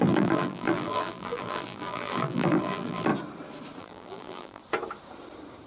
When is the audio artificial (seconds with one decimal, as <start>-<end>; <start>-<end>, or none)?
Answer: 0.0-3.1; 3.8-4.6

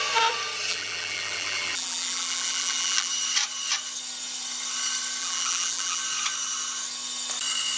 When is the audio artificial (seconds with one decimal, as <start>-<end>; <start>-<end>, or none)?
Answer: 0.7-3.1; 5.2-6.0

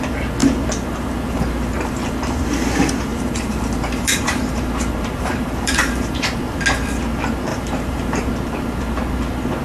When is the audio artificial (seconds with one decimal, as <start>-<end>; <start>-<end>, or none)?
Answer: 3.1-6.4; 7.5-8.3